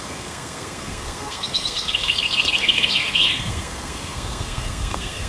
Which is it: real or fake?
fake